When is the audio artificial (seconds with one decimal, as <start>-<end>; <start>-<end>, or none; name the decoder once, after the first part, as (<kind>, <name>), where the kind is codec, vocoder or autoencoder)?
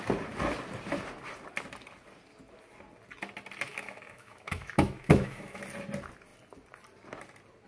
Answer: 3.7-5.6 (autoencoder, DAC-VAE)